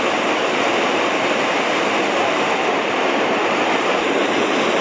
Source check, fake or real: fake